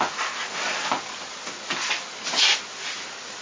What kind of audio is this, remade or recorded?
recorded